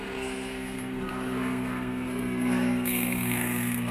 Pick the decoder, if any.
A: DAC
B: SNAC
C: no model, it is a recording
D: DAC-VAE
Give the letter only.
B